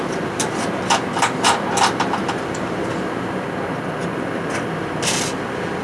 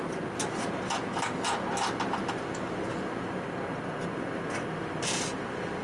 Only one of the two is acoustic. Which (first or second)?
second